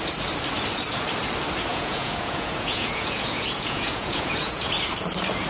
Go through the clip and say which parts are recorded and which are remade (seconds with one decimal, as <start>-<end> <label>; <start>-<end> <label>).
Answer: 0.0-1.7 recorded; 1.7-4.7 remade; 4.7-5.5 recorded